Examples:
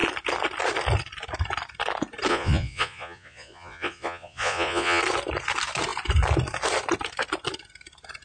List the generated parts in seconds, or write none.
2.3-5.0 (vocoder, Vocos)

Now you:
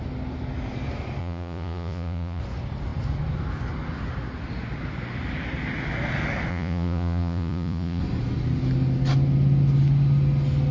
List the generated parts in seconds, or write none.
1.2-2.4 (vocoder, Vocos); 6.5-8.0

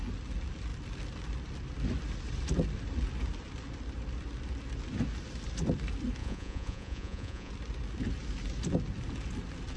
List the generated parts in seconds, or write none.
6.2-7.5 (vocoder, Vocos)

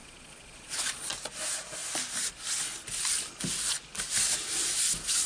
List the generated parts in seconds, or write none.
0.0-1.1 (vocoder, Vocos)

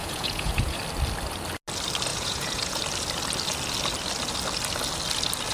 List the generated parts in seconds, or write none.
0.0-0.8 (vocoder, Vocos); 2.1-2.8

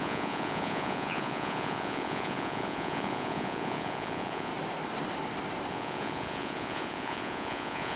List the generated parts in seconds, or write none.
0.0-4.5 (vocoder, Vocos); 5.7-8.0

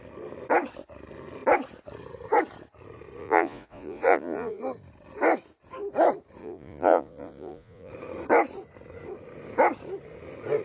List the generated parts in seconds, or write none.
3.2-4.6 (vocoder, Vocos); 6.4-7.9

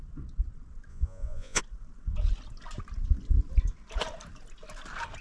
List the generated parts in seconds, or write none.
0.9-1.6 (vocoder, Vocos)